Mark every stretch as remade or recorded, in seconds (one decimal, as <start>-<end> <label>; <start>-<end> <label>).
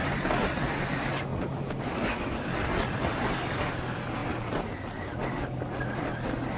0.0-3.1 recorded; 3.1-3.7 remade; 3.7-6.6 recorded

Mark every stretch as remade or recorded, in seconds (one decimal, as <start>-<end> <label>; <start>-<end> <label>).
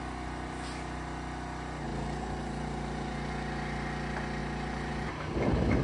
0.0-1.9 recorded; 1.9-3.3 remade; 3.3-4.4 recorded; 4.4-4.9 remade; 4.9-5.8 recorded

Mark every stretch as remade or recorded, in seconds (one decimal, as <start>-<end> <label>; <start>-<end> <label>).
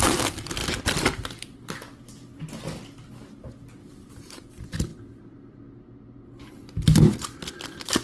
0.0-0.6 remade; 0.6-3.8 recorded; 3.8-4.9 remade; 4.9-7.5 recorded; 7.5-8.0 remade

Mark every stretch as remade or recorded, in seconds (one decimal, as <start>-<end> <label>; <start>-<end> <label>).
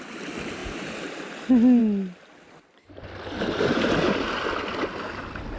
0.0-5.6 recorded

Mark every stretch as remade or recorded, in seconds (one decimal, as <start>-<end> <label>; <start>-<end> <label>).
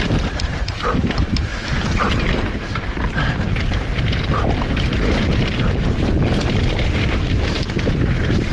0.0-1.5 remade; 1.5-2.4 recorded; 2.4-8.5 remade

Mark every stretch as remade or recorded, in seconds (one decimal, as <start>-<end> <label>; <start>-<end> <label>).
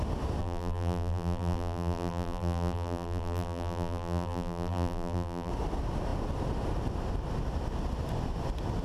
0.0-0.4 recorded; 0.4-5.5 remade; 5.5-8.8 recorded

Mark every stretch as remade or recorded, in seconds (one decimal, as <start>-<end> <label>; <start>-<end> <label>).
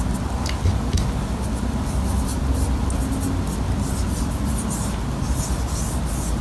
0.0-2.3 recorded; 2.3-2.8 remade; 2.8-6.4 recorded